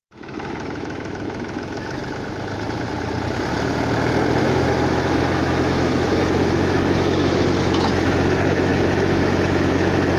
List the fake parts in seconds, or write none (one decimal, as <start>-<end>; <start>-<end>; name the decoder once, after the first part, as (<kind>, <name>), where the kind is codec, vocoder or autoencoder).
0.0-2.0 (autoencoder, DAC-VAE); 4.4-10.2